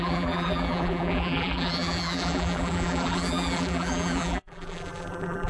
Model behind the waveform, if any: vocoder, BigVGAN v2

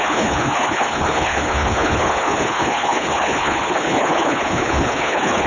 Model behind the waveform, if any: codec, HILCodec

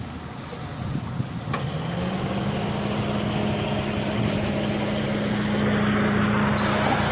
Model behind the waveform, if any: none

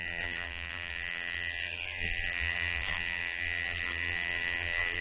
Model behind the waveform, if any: vocoder, BigVGAN v2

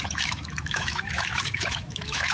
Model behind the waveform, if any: autoencoder, DAC-VAE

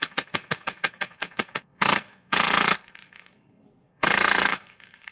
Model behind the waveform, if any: codec, SNAC